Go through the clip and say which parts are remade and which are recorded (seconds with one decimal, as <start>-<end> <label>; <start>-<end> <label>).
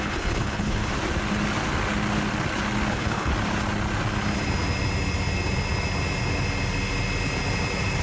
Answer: 0.0-0.9 remade; 0.9-2.9 recorded; 2.9-3.3 remade; 3.3-8.0 recorded